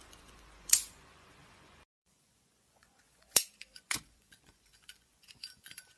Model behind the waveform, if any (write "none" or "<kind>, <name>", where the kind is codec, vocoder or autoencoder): vocoder, Vocos